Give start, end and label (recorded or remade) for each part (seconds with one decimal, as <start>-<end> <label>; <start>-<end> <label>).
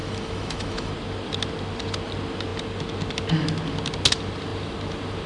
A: 0.0-0.9 remade; 0.9-5.3 recorded